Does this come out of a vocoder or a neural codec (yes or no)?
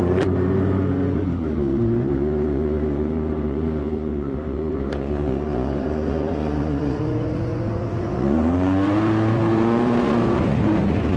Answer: yes